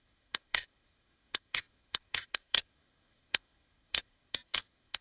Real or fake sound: fake